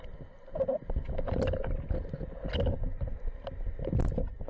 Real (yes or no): yes